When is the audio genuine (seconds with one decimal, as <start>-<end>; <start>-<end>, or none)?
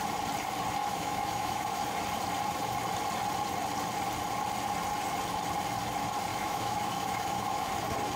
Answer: 0.0-0.8; 1.8-6.3; 7.7-8.2